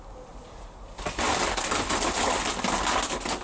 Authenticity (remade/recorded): recorded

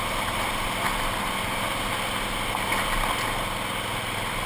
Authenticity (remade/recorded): recorded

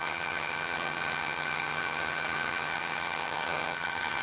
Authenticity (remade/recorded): remade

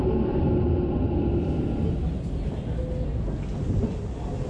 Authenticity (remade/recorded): recorded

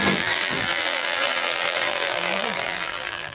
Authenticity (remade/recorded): remade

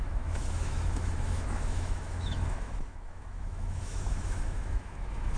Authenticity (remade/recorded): remade